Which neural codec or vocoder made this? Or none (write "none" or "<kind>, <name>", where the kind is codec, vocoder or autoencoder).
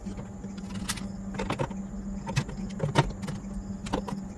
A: none